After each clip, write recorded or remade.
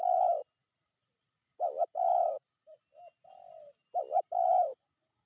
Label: recorded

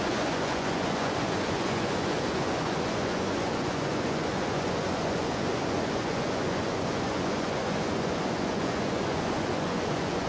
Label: remade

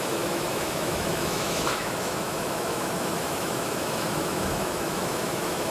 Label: remade